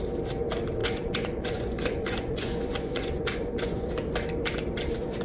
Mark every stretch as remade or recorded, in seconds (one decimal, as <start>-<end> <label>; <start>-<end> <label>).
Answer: 0.0-0.8 recorded; 0.8-3.9 remade; 3.9-5.2 recorded